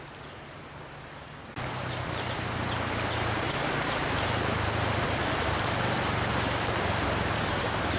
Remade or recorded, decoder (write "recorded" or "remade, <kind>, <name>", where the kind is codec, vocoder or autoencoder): recorded